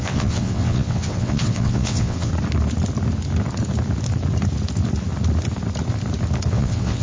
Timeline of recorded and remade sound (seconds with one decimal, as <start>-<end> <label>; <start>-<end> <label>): 0.0-2.3 remade; 2.3-6.5 recorded; 6.5-7.0 remade